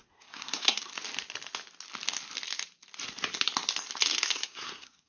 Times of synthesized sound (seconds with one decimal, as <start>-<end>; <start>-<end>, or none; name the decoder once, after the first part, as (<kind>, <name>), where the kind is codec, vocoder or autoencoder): 0.0-0.9 (codec, SNAC); 4.0-5.1